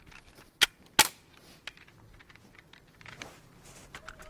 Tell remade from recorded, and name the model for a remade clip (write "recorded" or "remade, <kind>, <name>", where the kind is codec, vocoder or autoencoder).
recorded